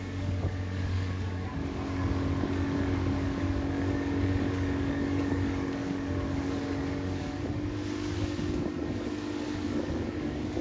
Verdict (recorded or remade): remade